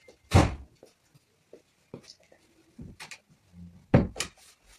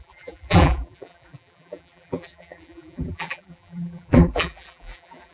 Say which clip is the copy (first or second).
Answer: second